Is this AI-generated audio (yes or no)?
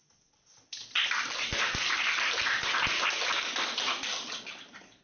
no